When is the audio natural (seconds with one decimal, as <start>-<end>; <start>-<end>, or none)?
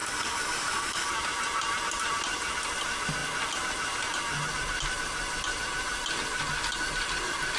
1.1-7.6